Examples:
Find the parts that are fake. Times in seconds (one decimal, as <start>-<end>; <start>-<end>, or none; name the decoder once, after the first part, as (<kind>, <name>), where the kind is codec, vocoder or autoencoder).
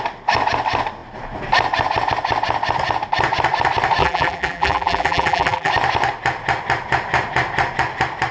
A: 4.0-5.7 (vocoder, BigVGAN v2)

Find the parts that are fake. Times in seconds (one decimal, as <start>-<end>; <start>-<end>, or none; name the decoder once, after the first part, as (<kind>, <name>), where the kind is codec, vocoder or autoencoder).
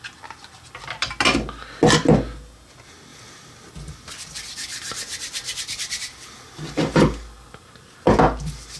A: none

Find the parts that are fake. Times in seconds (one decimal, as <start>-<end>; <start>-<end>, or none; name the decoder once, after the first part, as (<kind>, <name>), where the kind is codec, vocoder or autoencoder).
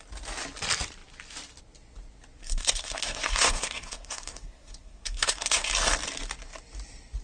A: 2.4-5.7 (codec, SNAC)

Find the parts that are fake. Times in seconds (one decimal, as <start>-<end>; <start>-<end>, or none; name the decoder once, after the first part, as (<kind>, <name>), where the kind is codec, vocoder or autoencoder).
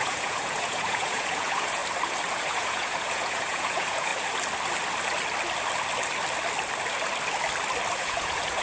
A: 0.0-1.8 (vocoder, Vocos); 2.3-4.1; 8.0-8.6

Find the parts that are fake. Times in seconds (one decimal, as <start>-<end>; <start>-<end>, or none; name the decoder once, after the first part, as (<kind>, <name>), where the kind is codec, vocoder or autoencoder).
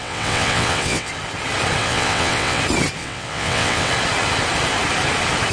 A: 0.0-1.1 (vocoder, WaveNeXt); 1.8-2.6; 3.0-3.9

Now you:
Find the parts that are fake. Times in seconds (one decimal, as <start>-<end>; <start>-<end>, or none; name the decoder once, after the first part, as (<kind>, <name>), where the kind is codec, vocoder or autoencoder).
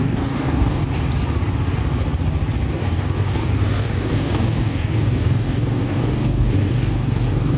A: 0.0-0.8 (codec, DAC); 2.7-7.6